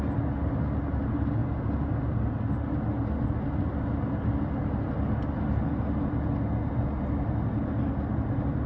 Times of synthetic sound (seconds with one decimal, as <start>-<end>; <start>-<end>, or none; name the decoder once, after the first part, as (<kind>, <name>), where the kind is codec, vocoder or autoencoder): none